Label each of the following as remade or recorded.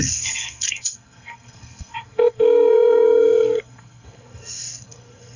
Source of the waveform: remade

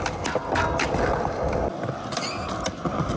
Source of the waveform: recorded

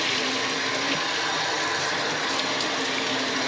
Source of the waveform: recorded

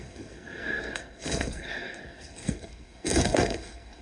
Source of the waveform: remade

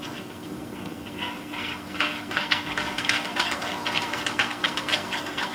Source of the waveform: remade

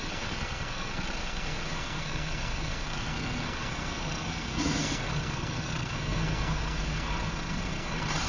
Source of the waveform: remade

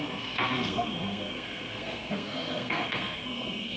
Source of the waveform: remade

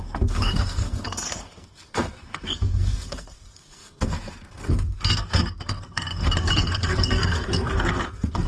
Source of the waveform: remade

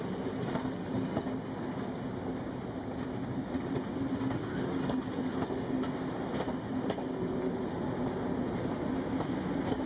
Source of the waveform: recorded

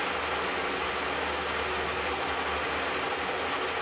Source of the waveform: recorded